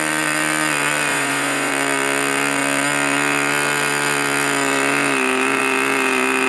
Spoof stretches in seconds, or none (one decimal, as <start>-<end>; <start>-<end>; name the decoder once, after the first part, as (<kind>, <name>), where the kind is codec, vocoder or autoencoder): 1.1-1.7 (vocoder, Vocos)